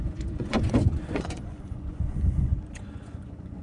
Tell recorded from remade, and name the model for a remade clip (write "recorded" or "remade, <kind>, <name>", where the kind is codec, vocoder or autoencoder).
remade, vocoder, Vocos